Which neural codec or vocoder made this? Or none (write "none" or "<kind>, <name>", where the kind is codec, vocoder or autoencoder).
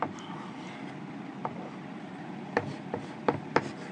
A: none